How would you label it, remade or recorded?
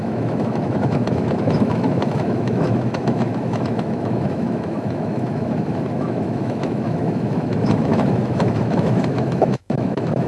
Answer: remade